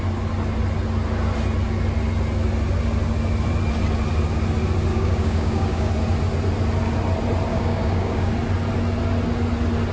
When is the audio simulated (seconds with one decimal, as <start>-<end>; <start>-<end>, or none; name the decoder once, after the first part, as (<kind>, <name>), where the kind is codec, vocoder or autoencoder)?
4.9-5.9 (codec, DAC); 7.5-8.3